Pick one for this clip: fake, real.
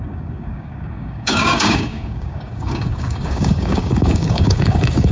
fake